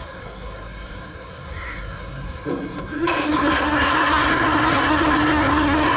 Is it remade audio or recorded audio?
remade